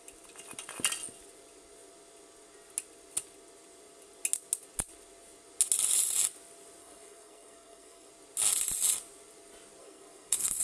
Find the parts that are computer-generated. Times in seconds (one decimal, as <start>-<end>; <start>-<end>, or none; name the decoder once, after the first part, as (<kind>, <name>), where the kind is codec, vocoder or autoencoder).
6.8-8.1 (codec, SNAC); 9.8-10.6